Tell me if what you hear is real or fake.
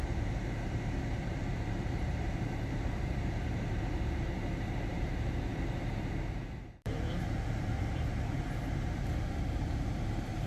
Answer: fake